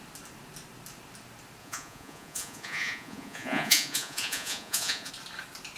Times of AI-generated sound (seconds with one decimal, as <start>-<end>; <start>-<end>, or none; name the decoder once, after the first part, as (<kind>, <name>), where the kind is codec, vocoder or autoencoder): 1.6-5.1 (vocoder, Vocos)